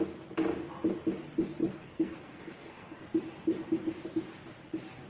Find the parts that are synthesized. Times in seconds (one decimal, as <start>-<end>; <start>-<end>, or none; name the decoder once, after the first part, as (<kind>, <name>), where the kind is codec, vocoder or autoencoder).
1.6-3.0 (codec, SNAC)